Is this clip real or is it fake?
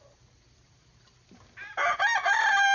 real